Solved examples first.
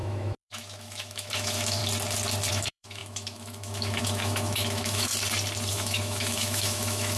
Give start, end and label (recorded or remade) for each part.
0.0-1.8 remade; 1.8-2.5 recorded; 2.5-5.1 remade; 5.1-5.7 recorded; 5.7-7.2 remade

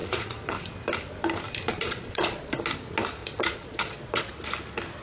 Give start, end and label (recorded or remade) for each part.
0.0-0.6 remade; 0.6-1.7 recorded; 1.7-2.6 remade; 2.6-3.2 recorded; 3.2-4.3 remade; 4.3-5.0 recorded

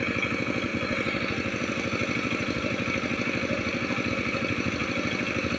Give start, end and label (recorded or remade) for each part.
0.0-5.6 recorded

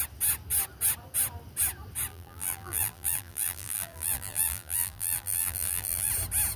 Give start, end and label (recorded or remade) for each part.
0.0-2.1 recorded; 2.1-6.1 remade; 6.1-6.6 recorded

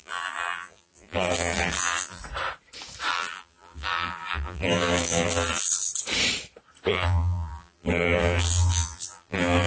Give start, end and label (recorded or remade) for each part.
0.0-2.2 remade; 2.2-3.1 recorded; 3.1-5.9 remade; 5.9-6.9 recorded; 6.9-9.7 remade

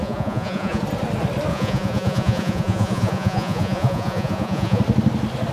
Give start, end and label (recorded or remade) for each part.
0.0-0.8 remade; 0.8-1.5 recorded; 1.5-4.8 remade; 4.8-5.5 recorded